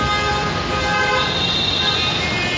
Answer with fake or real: real